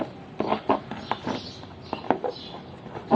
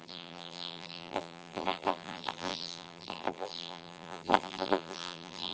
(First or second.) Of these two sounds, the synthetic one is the second